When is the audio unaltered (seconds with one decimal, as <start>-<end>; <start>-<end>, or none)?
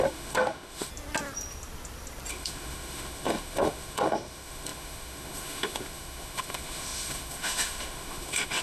0.9-2.3